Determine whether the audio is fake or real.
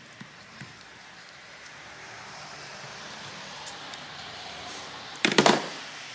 fake